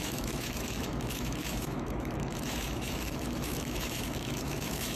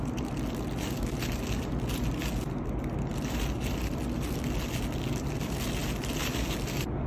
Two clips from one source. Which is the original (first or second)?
second